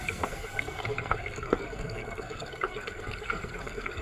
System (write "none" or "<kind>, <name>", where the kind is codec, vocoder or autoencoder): codec, SNAC